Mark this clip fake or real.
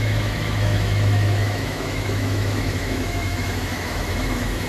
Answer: fake